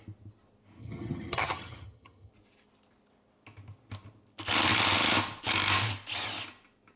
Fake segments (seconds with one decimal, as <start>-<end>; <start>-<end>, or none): 0.8-2.3